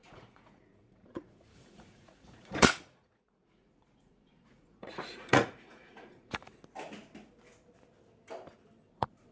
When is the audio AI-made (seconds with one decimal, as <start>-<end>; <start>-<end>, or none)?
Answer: 0.0-6.5; 8.9-9.3